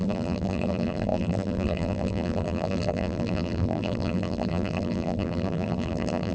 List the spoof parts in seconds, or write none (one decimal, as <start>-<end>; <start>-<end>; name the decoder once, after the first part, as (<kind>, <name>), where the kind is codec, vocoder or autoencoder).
0.0-6.3 (vocoder, BigVGAN v2)